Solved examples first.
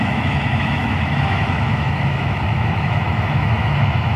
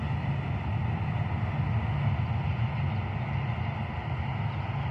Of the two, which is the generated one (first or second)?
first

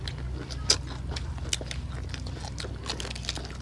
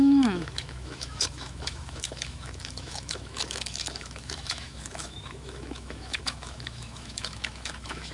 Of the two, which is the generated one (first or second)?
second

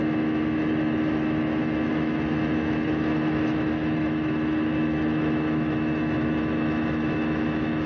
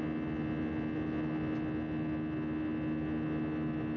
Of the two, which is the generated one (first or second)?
first